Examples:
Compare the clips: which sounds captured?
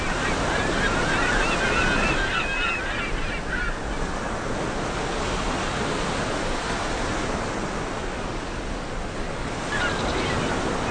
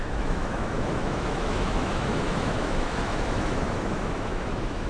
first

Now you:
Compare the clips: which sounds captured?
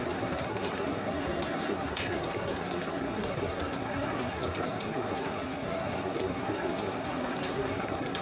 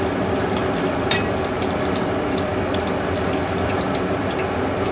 second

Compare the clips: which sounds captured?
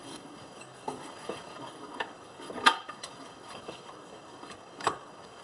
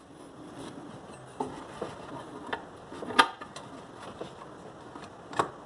second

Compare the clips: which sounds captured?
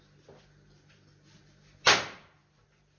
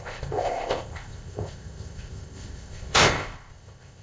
first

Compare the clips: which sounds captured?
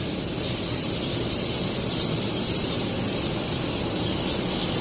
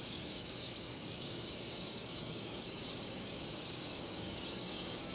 first